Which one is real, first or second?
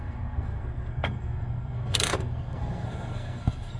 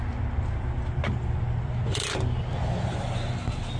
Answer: second